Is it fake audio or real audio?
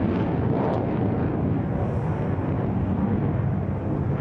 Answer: real